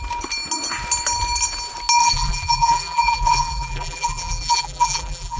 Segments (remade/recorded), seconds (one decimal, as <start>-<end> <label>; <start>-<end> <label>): 0.0-2.0 recorded; 2.0-5.4 remade

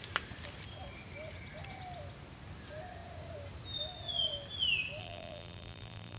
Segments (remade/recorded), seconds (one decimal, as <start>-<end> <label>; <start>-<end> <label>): 0.0-5.0 recorded; 5.0-6.2 remade

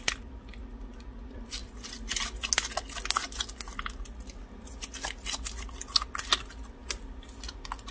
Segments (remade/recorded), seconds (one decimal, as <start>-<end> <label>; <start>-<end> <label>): 0.0-1.6 remade; 1.6-6.3 recorded; 6.3-7.9 remade

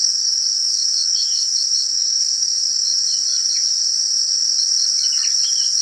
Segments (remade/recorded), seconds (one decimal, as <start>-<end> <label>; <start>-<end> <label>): 0.0-0.5 recorded; 0.5-2.7 remade; 2.7-5.8 recorded

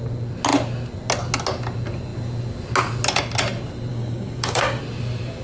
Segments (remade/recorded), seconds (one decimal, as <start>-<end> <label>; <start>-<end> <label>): 0.0-3.9 recorded; 3.9-4.8 remade; 4.8-5.4 recorded

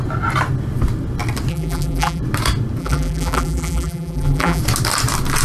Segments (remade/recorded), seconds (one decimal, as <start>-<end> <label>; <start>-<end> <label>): 0.0-1.5 recorded; 1.5-2.2 remade; 2.2-2.8 recorded; 2.8-4.6 remade; 4.6-5.4 recorded

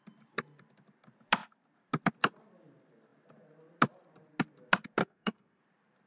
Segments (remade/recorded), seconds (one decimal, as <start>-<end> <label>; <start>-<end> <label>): 0.0-5.0 recorded; 5.0-5.6 remade; 5.6-6.1 recorded